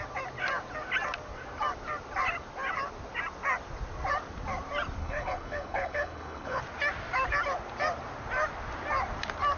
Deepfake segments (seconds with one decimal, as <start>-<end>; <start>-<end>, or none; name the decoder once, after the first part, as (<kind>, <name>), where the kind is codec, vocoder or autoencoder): 5.0-6.6 (codec, HILCodec)